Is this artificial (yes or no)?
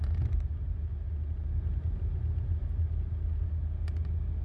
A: no